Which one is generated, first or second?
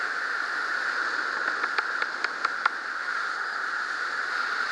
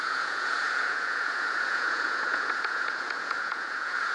second